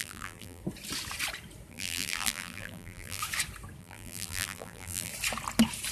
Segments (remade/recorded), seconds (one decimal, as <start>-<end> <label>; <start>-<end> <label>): 0.0-0.6 remade; 0.6-1.7 recorded; 1.7-3.2 remade; 3.2-3.8 recorded; 3.8-5.1 remade; 5.1-5.9 recorded